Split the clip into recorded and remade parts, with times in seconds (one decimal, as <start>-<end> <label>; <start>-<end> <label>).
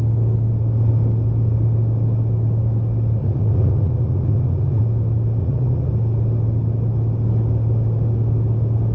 0.0-3.2 recorded; 3.2-4.8 remade; 4.8-5.4 recorded; 5.4-5.9 remade; 5.9-8.9 recorded